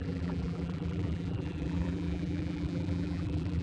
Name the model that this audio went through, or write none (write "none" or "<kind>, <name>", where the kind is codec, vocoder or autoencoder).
vocoder, BigVGAN v2